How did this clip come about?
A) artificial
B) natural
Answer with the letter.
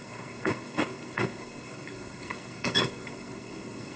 A